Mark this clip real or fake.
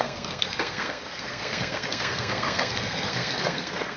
fake